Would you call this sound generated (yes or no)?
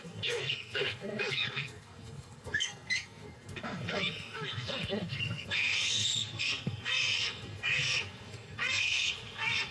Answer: yes